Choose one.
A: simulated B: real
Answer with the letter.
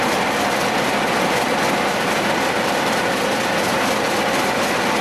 B